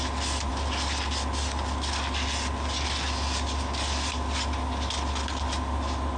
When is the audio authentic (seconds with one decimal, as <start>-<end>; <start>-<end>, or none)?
0.0-6.2